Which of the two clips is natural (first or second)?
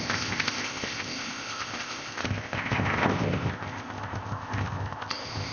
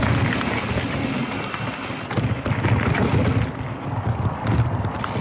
second